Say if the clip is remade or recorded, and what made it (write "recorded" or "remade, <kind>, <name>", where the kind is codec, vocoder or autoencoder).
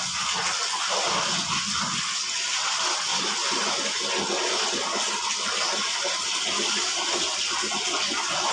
recorded